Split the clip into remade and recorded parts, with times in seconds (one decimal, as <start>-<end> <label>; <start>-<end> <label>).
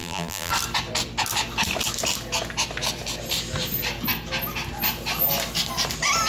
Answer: 0.0-0.5 remade; 0.5-6.3 recorded